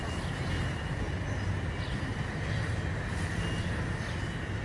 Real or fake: real